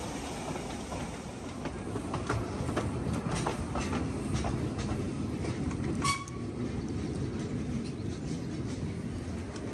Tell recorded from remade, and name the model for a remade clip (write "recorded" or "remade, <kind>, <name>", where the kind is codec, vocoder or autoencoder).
recorded